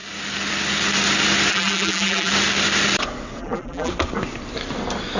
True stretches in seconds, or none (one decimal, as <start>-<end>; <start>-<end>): 0.0-1.5; 2.3-3.4; 3.9-5.2

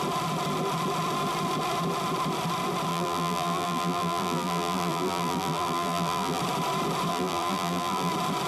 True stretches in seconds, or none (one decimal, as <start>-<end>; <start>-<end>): 0.0-2.9; 6.4-7.1; 8.1-8.5

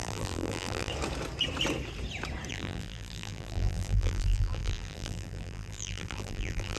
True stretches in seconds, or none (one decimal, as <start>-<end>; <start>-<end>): 0.9-2.5

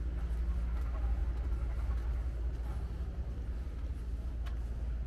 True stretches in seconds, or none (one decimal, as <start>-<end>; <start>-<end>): 0.0-5.1